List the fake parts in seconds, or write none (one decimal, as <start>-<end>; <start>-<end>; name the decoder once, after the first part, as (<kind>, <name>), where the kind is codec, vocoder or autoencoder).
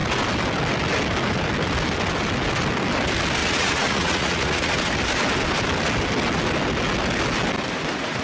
3.4-4.9 (vocoder, Vocos)